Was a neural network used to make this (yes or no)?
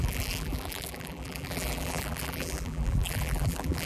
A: yes